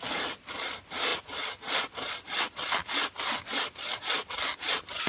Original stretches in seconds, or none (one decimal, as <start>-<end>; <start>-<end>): 0.0-5.1